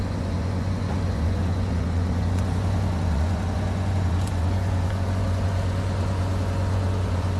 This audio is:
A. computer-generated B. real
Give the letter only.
A